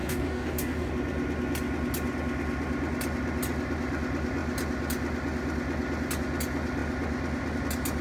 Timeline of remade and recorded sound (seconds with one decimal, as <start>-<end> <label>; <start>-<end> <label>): 0.0-0.9 remade; 0.9-8.0 recorded